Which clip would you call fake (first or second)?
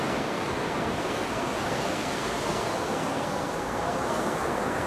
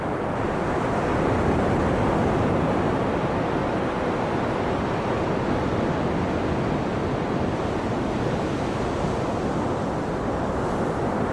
first